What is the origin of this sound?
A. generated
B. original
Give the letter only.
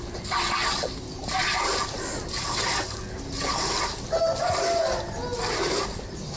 B